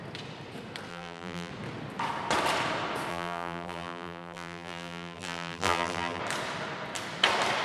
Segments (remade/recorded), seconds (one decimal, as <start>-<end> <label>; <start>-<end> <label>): 0.0-0.9 recorded; 0.9-1.5 remade; 1.5-3.1 recorded; 3.1-6.2 remade; 6.2-7.6 recorded